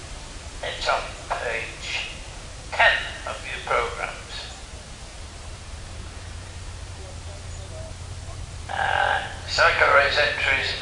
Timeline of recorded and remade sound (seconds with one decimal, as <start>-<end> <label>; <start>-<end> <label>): 0.0-5.1 recorded; 5.1-7.1 remade; 7.1-10.8 recorded